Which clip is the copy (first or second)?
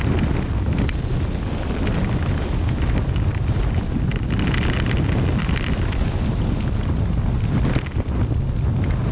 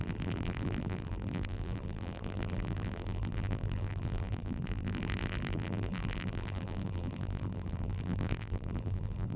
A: second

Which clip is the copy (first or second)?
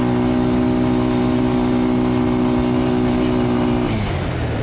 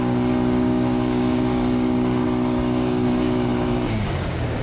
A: second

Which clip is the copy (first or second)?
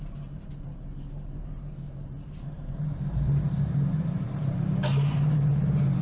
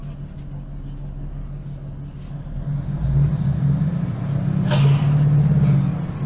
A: first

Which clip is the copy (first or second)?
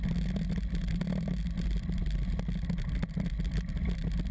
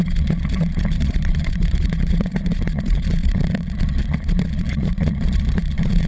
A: second